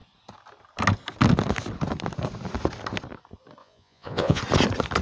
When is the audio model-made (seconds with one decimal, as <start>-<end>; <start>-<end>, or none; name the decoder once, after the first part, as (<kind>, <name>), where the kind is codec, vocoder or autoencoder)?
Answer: 3.6-4.4 (vocoder, Vocos)